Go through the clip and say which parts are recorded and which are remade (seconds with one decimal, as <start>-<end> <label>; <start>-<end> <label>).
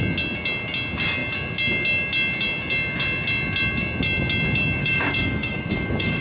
0.0-4.8 recorded; 4.8-6.2 remade